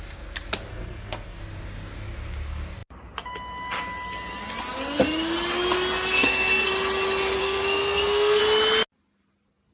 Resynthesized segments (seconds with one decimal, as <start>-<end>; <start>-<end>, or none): 0.7-1.4; 6.1-6.7; 7.4-8.4